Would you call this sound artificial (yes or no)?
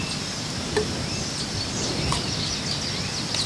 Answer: no